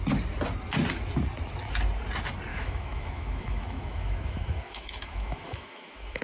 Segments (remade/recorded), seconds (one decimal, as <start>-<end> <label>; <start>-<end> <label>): 0.0-2.5 recorded; 2.5-6.2 remade